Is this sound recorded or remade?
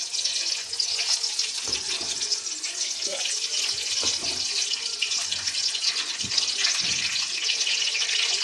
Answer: remade